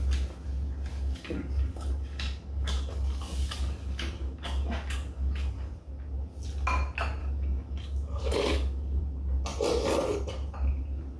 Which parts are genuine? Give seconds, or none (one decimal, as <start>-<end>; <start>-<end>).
0.0-0.9; 5.7-7.2; 9.0-11.2